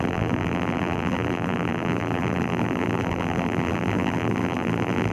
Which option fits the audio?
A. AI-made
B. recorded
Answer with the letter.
A